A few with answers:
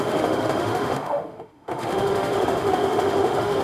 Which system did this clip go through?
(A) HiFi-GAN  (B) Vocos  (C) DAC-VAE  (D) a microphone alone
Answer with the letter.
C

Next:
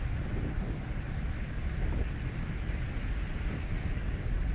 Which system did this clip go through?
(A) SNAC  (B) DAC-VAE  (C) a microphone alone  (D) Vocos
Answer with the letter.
C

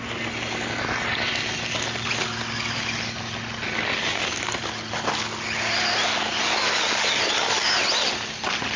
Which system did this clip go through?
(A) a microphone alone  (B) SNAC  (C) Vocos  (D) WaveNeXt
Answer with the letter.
A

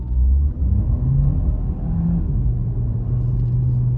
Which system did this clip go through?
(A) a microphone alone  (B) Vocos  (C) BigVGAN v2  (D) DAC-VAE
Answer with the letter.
A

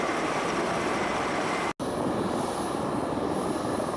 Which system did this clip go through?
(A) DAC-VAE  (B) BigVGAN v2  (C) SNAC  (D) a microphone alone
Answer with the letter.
D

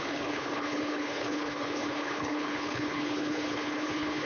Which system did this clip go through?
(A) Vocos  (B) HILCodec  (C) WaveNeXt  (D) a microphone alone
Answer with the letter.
B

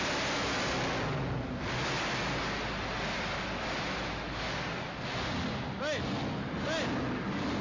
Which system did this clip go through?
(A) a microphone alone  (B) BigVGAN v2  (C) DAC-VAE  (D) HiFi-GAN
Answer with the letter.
A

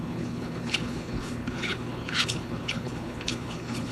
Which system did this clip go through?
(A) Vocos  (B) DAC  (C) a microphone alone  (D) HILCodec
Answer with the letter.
D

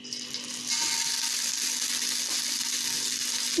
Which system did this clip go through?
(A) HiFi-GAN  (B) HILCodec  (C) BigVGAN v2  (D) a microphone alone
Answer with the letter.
D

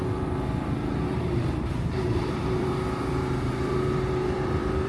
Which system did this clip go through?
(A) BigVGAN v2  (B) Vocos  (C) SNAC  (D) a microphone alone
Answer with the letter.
A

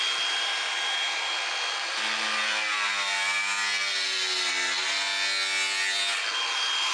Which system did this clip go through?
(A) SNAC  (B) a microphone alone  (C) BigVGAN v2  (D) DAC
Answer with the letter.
B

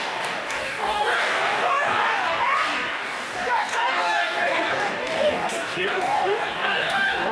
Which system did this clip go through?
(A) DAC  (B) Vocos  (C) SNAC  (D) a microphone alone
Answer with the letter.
A